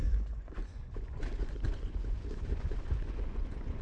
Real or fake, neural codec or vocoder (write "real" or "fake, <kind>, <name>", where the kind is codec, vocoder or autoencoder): fake, vocoder, Vocos